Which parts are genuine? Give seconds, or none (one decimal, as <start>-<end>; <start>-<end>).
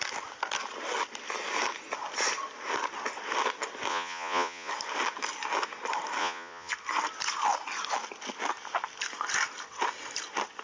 0.0-3.9; 4.7-6.2; 6.7-10.6